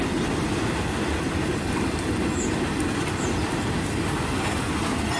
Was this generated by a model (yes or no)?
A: no